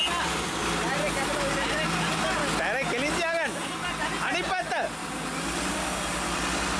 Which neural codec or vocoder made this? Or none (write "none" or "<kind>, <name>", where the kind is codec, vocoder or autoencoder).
none